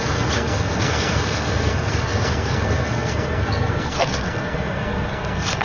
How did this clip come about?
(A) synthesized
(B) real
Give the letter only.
A